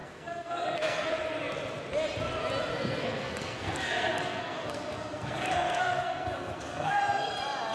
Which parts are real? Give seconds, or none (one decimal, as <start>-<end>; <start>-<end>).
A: 1.1-2.7; 7.3-7.7